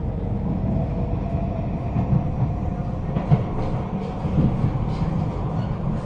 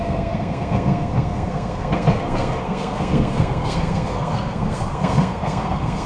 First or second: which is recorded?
first